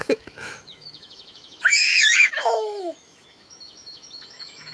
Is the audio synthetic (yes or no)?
yes